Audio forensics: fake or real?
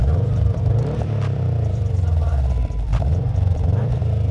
fake